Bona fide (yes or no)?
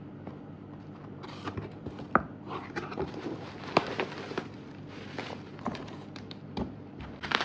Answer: no